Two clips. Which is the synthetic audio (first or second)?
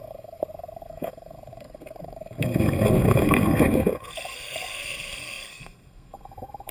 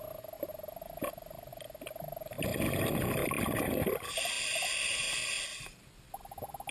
first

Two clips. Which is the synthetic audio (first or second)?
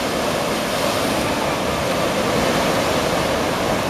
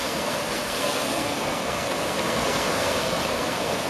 second